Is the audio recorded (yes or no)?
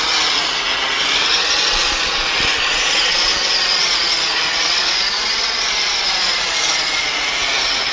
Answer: yes